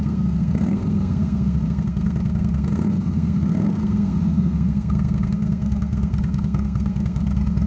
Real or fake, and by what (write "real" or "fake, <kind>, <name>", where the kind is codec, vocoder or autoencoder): fake, codec, SNAC